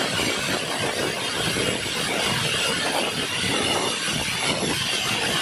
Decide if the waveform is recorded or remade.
recorded